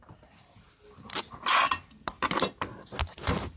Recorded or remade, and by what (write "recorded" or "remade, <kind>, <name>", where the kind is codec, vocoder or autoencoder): recorded